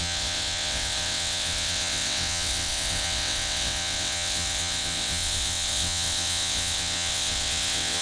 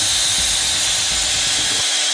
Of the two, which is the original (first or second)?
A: second